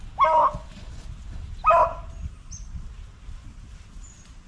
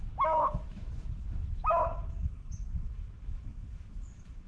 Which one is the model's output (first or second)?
second